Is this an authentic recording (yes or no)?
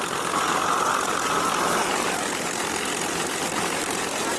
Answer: yes